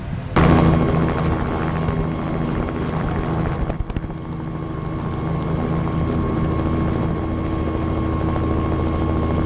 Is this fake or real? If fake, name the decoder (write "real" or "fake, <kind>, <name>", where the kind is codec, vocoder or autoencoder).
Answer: real